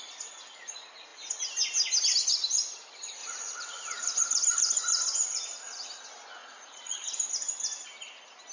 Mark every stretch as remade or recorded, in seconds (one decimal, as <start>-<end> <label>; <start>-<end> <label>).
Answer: 0.0-3.2 recorded; 3.2-4.2 remade; 4.2-6.4 recorded; 6.4-7.1 remade; 7.1-8.5 recorded